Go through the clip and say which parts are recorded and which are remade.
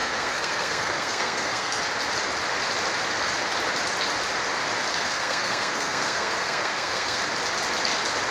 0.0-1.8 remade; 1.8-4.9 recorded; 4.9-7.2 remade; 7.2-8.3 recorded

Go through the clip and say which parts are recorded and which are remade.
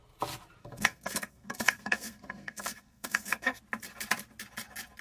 0.0-0.6 recorded; 0.6-3.6 remade; 3.6-5.0 recorded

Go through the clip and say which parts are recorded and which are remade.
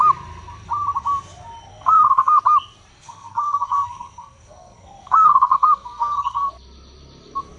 0.0-1.7 recorded; 1.7-2.4 remade; 2.4-2.9 recorded; 2.9-6.5 remade; 6.5-7.6 recorded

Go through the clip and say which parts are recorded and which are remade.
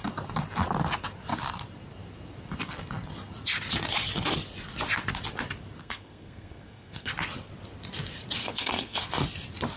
0.0-5.8 recorded; 5.8-7.1 remade; 7.1-8.4 recorded; 8.4-9.0 remade; 9.0-9.8 recorded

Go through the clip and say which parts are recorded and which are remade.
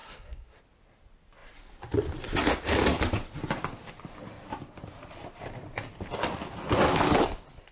0.0-0.6 remade; 0.6-7.7 recorded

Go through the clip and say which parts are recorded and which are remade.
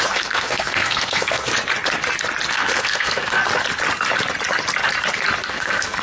0.0-1.5 remade; 1.5-2.5 recorded; 2.5-3.4 remade; 3.4-5.5 recorded; 5.5-6.0 remade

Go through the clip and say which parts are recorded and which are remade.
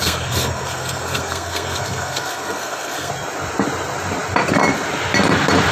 0.0-3.1 remade; 3.1-5.7 recorded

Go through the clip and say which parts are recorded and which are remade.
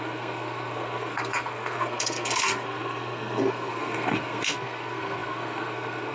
0.0-6.1 remade